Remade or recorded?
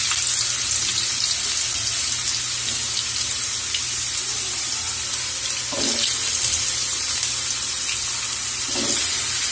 recorded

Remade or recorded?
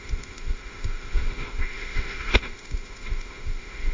remade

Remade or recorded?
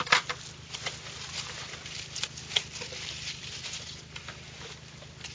remade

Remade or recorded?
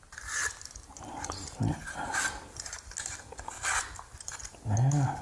recorded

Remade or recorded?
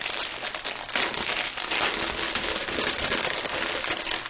recorded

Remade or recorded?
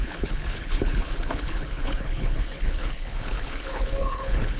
remade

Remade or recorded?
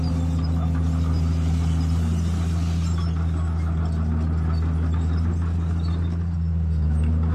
recorded